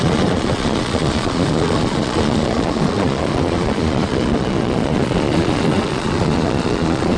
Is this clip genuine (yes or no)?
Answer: no